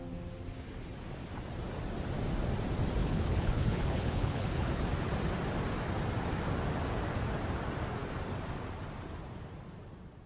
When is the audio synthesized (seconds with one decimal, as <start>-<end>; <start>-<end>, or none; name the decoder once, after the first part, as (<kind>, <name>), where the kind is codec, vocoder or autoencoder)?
3.0-4.8 (codec, HILCodec)